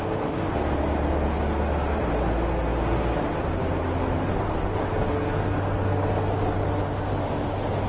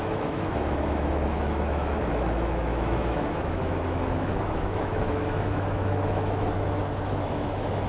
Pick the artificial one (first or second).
second